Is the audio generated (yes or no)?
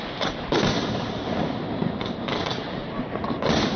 no